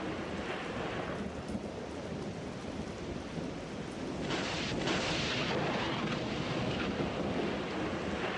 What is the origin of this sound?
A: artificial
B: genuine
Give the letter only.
B